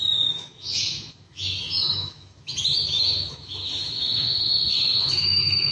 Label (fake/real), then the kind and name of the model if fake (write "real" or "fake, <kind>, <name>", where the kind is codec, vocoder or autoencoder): fake, autoencoder, DAC-VAE